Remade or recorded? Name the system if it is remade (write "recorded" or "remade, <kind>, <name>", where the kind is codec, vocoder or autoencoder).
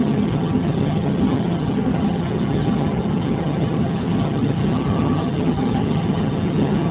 remade, vocoder, HiFi-GAN